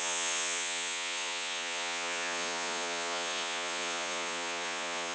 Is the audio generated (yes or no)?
yes